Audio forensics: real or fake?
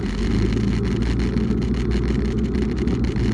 real